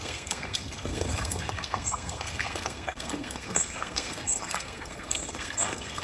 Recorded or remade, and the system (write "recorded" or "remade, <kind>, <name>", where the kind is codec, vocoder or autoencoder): remade, codec, SNAC